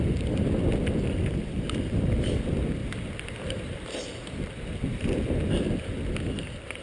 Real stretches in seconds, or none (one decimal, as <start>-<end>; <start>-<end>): none